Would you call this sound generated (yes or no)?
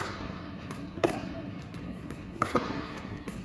yes